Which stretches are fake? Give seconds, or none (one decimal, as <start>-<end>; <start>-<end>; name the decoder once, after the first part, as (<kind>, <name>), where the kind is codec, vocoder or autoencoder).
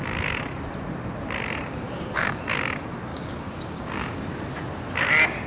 1.7-2.4 (codec, DAC); 3.1-4.2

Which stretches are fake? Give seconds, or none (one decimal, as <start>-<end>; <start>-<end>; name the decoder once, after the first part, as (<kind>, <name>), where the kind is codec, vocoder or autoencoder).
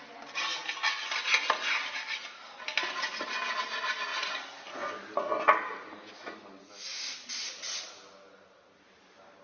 none